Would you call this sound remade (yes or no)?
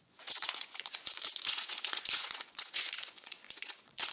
yes